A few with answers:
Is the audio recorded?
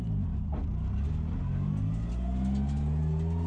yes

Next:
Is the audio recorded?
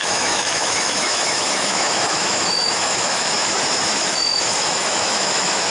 no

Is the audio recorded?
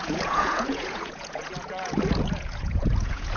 no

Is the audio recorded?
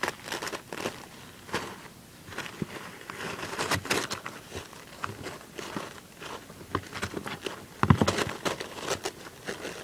yes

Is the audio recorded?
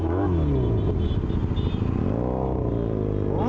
yes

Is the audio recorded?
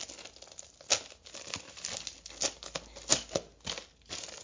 yes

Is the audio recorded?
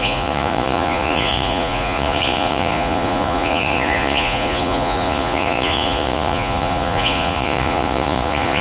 no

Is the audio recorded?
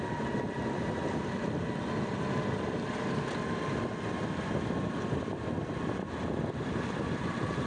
yes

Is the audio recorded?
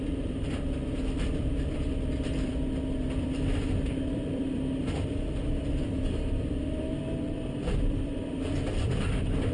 no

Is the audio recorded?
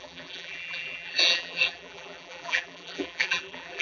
no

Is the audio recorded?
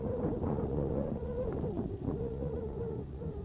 no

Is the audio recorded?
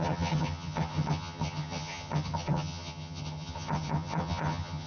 no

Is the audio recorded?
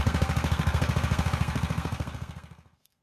no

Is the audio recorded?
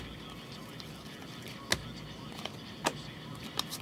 yes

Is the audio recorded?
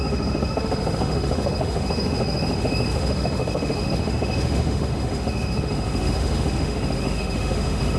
no